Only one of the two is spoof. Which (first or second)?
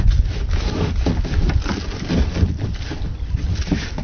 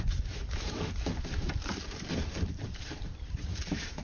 second